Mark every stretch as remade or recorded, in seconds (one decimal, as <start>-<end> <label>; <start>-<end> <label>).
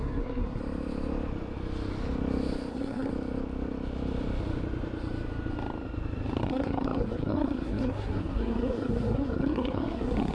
0.0-0.6 remade; 0.6-2.7 recorded; 2.7-3.1 remade; 3.1-6.4 recorded; 6.4-10.3 remade